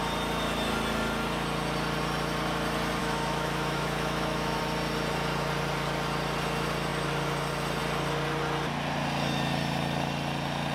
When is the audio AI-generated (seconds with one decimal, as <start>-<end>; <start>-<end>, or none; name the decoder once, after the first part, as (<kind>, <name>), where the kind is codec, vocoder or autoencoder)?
3.0-4.6 (autoencoder, DAC-VAE)